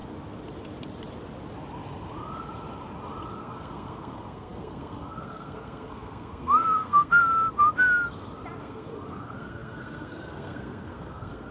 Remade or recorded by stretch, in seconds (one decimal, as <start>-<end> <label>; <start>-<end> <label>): 0.0-3.4 recorded; 3.4-7.2 remade; 7.2-8.6 recorded; 8.6-11.5 remade